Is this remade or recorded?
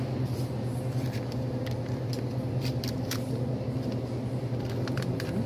recorded